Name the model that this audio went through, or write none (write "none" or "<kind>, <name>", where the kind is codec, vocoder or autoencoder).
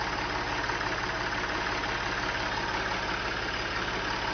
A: none